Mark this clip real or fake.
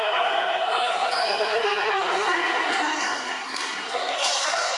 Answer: fake